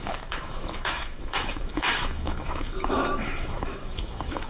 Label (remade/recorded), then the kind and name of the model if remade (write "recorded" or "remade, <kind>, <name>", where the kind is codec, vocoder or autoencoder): remade, autoencoder, DAC-VAE